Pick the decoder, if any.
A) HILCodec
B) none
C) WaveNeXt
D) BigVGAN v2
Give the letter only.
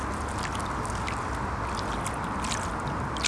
B